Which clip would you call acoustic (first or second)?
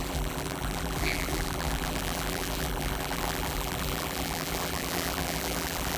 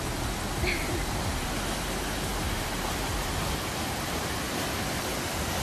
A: second